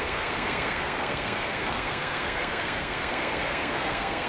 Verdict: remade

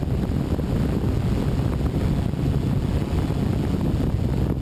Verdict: recorded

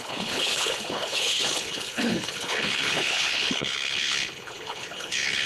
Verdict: remade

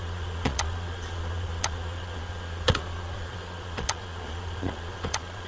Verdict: remade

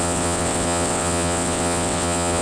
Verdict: remade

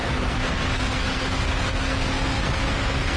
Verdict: remade